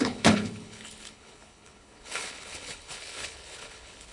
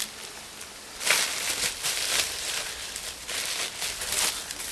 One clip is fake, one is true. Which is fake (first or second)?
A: first